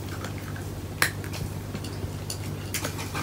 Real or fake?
real